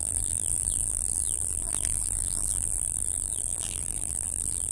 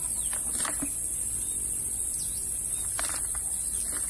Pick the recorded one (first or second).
second